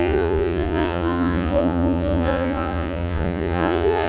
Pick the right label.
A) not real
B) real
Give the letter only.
A